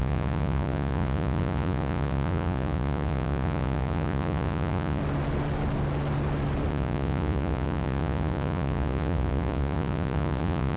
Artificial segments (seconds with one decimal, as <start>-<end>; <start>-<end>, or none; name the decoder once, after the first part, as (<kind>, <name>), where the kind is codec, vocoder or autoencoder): 0.0-5.0 (vocoder, Vocos); 6.7-10.8